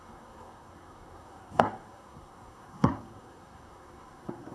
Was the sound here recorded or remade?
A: remade